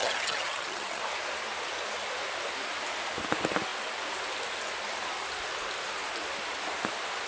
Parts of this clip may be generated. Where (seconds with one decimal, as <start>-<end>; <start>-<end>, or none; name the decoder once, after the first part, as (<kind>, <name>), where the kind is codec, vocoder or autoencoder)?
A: 0.0-1.0 (vocoder, HiFi-GAN)